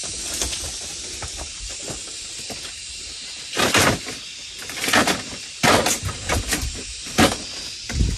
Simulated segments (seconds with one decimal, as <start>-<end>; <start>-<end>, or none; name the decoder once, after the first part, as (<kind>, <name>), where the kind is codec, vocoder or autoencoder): 5.0-6.0 (vocoder, BigVGAN v2)